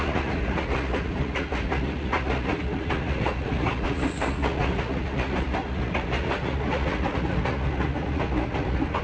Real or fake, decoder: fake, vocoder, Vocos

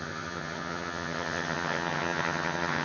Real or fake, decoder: fake, vocoder, HiFi-GAN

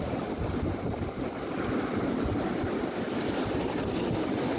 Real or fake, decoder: real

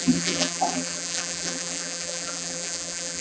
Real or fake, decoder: fake, vocoder, BigVGAN v2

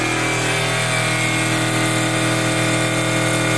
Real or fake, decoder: real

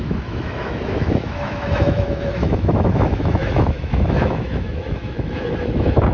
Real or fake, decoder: fake, autoencoder, DAC-VAE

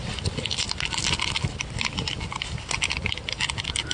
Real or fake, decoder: real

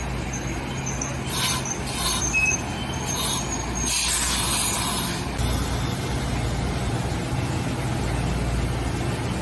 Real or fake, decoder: real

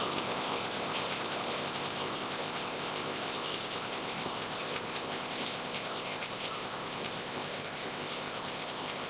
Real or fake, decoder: fake, codec, ZipCodec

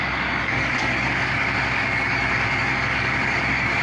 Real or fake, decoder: fake, codec, DAC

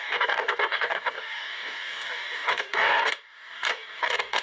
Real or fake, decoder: fake, codec, DAC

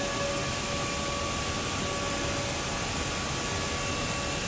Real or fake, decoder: real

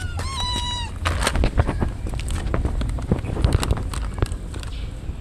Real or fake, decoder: real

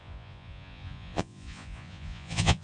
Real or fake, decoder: fake, vocoder, Vocos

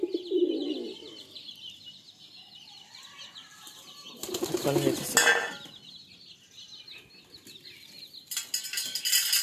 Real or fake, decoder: real